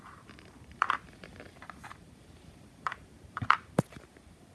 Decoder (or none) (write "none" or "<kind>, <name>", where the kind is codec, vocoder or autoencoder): vocoder, BigVGAN v2